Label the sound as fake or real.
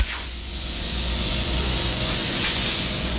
fake